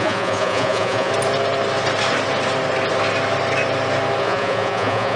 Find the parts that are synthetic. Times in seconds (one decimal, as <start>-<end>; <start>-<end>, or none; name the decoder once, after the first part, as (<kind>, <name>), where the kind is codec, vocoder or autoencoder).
0.0-1.1 (vocoder, Vocos); 4.2-5.2